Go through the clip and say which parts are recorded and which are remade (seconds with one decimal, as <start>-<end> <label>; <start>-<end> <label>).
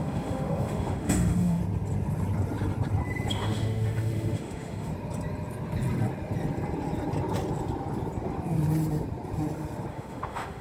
0.0-1.6 remade; 1.6-3.3 recorded; 3.3-4.9 remade; 4.9-9.9 recorded; 9.9-10.6 remade